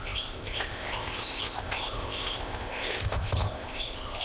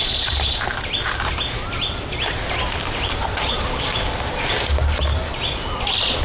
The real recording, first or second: second